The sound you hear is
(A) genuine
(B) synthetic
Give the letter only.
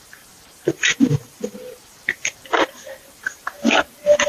B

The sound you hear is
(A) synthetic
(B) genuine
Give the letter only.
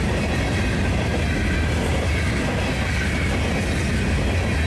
B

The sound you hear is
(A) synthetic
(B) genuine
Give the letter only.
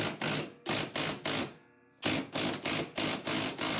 B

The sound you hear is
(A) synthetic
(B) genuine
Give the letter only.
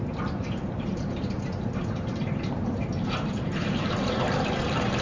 A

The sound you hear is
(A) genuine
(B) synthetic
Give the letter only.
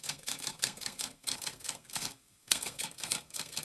B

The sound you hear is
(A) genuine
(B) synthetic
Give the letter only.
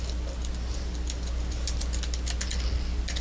A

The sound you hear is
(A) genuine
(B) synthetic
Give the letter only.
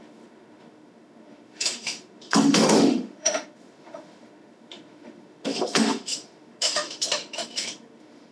B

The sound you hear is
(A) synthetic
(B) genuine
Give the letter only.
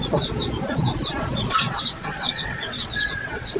A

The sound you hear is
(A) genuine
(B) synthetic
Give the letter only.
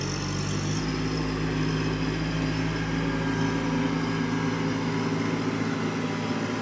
A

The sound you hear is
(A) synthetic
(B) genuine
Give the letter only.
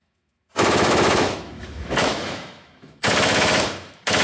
A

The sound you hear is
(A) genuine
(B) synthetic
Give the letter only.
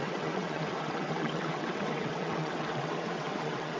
B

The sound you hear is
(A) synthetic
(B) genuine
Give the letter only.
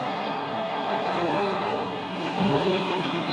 A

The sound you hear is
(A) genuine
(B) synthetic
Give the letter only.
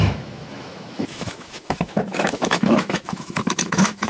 B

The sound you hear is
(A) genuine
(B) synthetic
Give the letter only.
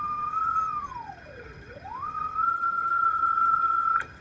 B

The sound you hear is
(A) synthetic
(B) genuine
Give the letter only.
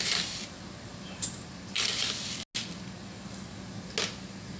B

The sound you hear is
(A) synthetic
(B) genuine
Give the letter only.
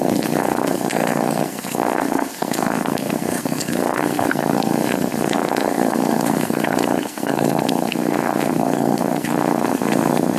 A